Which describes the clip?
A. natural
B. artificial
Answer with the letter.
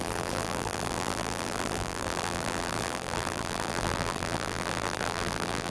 B